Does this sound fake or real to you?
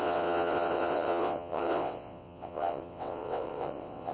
fake